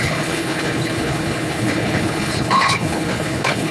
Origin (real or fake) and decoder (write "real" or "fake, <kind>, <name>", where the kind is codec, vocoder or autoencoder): fake, codec, HILCodec